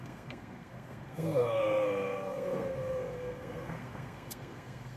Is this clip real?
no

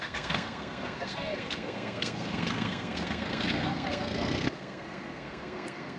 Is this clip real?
no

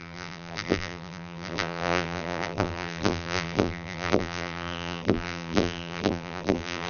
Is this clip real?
no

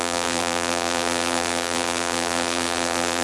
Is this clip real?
no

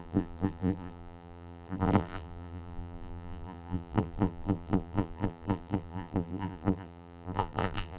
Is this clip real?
no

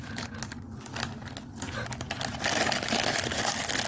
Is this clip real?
yes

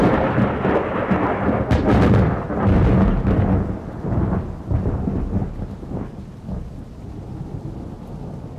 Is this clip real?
yes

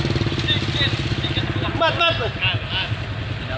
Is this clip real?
yes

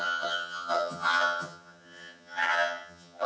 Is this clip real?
no